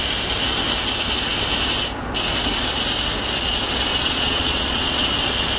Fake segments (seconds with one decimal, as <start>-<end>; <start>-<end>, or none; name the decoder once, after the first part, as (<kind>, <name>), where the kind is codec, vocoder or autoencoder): 3.9-5.1 (vocoder, Vocos)